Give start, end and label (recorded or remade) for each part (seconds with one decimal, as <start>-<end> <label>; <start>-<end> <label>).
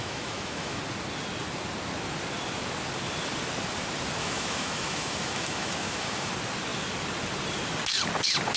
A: 0.0-0.8 remade; 0.8-4.2 recorded; 4.2-6.3 remade; 6.3-8.6 recorded